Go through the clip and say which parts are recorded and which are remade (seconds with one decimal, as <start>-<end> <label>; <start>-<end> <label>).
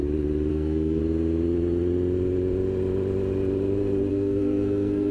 0.0-0.5 recorded; 0.5-1.0 remade; 1.0-4.1 recorded; 4.1-5.1 remade